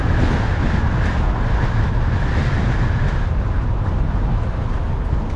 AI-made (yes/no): no